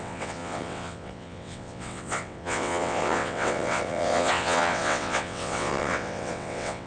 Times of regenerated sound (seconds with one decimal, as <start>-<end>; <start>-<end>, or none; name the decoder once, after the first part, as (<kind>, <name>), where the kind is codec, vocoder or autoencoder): 0.0-6.9 (vocoder, WaveNeXt)